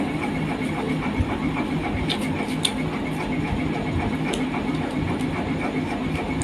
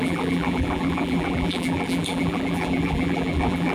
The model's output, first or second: second